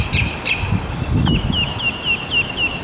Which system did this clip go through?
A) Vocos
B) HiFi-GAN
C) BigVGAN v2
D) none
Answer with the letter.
D